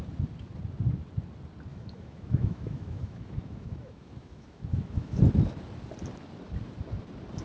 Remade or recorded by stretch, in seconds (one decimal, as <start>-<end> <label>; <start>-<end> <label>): 0.0-1.7 recorded; 1.7-5.2 remade; 5.2-7.4 recorded